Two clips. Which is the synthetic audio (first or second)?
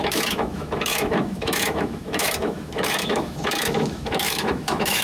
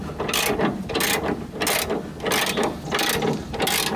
first